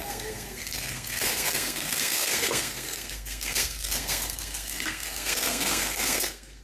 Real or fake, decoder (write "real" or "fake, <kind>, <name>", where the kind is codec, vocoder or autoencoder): fake, codec, SNAC